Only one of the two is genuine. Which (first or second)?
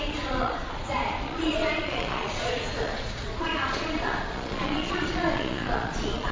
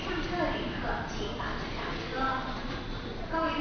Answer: second